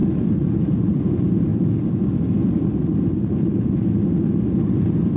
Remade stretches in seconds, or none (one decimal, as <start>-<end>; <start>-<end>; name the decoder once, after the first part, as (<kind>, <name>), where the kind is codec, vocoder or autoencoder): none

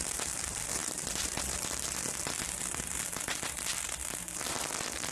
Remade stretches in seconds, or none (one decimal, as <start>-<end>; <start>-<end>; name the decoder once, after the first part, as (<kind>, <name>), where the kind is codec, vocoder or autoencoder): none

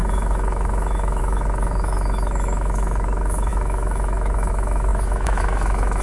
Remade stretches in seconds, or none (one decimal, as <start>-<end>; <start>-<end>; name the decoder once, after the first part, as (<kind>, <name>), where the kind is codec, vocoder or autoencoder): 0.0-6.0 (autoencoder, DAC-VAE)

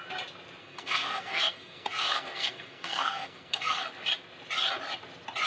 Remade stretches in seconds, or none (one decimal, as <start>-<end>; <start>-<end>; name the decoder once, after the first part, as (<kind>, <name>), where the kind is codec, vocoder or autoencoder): 0.6-3.9 (codec, SNAC)

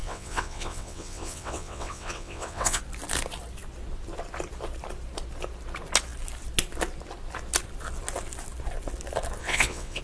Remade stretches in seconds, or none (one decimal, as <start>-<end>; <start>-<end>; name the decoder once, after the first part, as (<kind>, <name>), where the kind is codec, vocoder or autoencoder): 0.0-2.8 (vocoder, WaveNeXt); 9.4-10.0

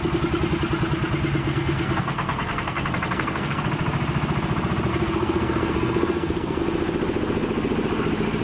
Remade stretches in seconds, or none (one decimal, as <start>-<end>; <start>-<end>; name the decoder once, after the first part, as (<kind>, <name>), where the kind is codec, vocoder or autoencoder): 1.4-3.6 (codec, SNAC); 4.9-6.6